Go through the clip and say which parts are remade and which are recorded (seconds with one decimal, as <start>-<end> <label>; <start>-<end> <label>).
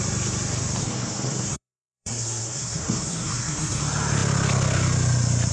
0.0-0.8 recorded; 0.8-3.8 remade; 3.8-5.5 recorded